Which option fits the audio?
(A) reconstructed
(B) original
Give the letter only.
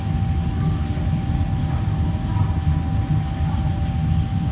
B